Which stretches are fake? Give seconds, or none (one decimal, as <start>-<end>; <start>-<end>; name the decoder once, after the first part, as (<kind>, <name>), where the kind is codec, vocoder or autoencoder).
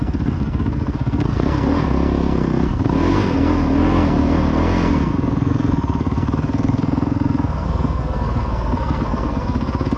0.0-10.0 (codec, SNAC)